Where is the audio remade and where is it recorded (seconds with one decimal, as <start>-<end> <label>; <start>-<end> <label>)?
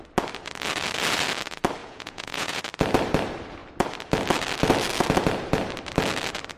0.0-1.8 recorded; 1.8-2.6 remade; 2.6-6.6 recorded